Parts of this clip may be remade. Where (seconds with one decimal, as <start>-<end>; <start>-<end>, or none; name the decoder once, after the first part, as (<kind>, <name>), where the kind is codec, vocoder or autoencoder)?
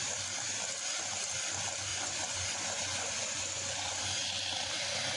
1.9-4.0 (vocoder, Vocos)